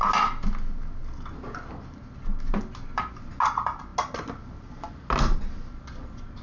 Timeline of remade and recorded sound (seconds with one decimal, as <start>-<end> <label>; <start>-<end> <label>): 0.0-6.4 recorded